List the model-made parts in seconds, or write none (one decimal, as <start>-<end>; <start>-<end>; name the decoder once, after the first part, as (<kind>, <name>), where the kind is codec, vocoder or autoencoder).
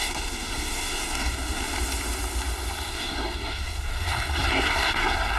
0.0-1.6 (codec, SNAC); 2.9-5.4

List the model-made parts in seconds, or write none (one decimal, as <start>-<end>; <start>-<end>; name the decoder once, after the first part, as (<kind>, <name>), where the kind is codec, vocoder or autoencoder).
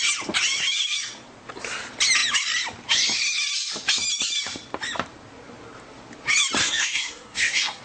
6.6-7.8 (codec, SNAC)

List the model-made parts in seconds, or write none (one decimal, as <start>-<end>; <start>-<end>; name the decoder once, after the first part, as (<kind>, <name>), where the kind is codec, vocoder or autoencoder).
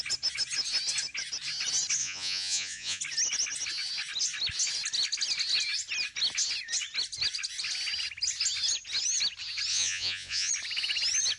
2.0-3.0 (vocoder, Vocos); 9.7-10.5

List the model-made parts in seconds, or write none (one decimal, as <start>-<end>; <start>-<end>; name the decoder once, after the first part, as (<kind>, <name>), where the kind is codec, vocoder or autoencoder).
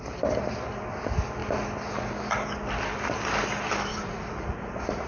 3.9-5.1 (vocoder, Vocos)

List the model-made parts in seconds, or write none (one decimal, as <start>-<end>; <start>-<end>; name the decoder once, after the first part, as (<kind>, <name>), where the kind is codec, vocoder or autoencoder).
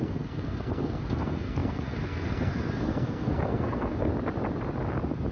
0.0-4.1 (codec, SNAC)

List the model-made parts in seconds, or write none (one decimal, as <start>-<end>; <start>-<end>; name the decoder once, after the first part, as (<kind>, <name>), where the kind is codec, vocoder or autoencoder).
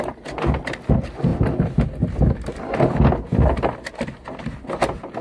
none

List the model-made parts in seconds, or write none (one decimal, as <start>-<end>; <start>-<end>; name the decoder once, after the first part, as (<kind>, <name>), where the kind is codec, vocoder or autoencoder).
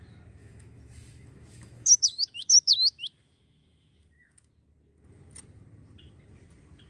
0.4-4.5 (autoencoder, DAC-VAE)